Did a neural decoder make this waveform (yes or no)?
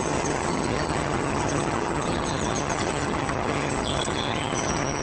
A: yes